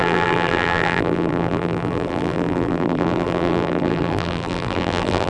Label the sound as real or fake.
fake